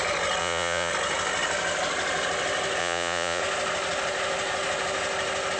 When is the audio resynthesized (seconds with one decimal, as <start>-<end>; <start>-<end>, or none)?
0.4-0.9; 2.8-3.4